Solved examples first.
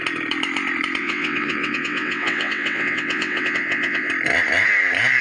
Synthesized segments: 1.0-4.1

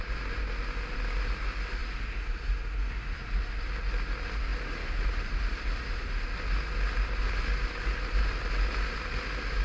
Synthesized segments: none

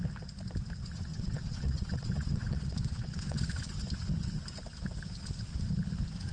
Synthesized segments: 1.1-3.7

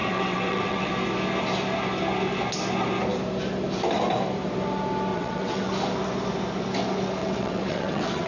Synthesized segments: 0.0-0.9; 5.1-5.7; 7.2-8.3